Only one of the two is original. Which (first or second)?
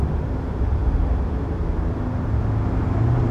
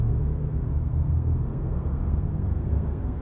first